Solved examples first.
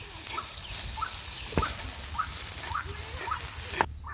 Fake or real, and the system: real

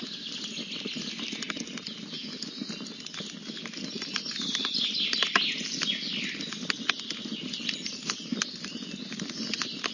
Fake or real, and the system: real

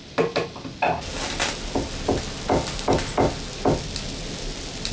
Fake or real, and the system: real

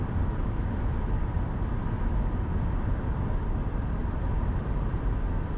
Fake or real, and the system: fake, vocoder, BigVGAN v2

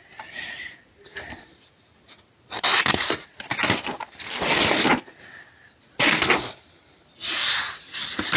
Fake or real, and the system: real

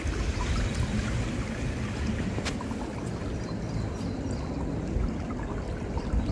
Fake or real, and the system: real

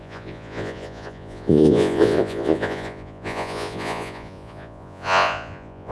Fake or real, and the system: fake, vocoder, Vocos